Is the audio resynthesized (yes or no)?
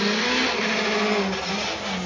no